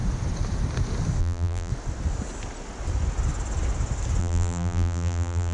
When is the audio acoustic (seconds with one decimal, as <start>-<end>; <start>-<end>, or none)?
0.0-1.2; 1.7-4.2